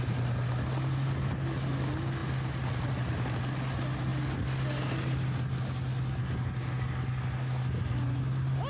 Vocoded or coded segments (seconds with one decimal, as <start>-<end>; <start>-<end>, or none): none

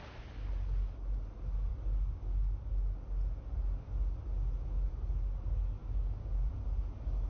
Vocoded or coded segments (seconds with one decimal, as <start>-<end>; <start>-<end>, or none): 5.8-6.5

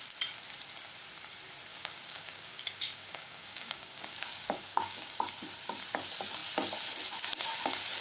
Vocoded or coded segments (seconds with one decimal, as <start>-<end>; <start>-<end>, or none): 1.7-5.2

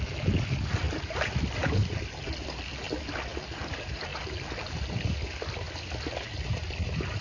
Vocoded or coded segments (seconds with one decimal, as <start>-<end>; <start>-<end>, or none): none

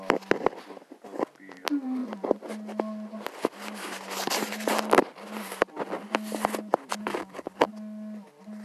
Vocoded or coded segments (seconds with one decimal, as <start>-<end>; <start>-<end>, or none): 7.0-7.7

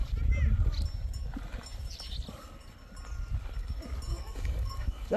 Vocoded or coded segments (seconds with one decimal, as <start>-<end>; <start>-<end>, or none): 4.1-5.2

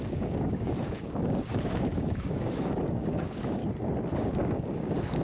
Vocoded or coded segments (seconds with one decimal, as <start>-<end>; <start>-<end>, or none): 0.0-3.6; 4.1-5.2